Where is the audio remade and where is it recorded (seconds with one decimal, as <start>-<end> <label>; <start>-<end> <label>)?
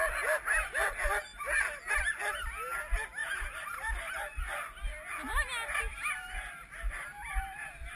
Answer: 0.0-3.2 recorded; 3.2-4.4 remade; 4.4-7.3 recorded; 7.3-8.0 remade